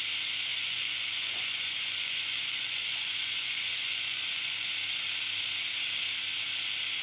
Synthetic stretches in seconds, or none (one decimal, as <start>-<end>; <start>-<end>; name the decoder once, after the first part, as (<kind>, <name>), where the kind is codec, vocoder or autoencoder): 0.5-4.7 (vocoder, Vocos)